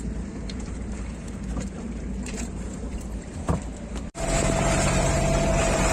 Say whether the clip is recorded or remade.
remade